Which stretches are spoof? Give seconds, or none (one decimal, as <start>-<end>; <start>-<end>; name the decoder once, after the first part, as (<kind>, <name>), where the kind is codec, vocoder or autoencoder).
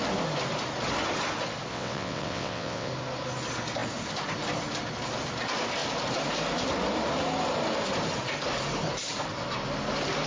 1.7-2.9 (vocoder, WaveNeXt)